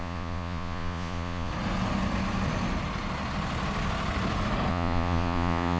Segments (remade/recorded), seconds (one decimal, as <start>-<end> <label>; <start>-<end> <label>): 0.0-1.5 remade; 1.5-4.7 recorded; 4.7-5.8 remade